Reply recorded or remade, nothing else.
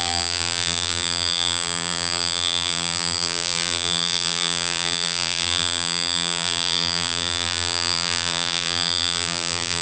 remade